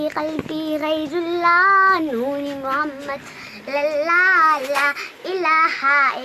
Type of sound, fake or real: real